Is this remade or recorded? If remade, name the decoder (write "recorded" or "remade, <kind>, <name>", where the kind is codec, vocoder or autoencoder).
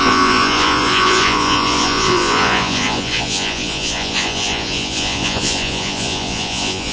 remade, vocoder, Vocos